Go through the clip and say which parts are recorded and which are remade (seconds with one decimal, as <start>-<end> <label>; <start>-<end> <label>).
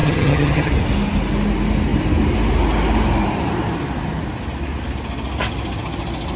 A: 0.0-0.7 remade; 0.7-6.4 recorded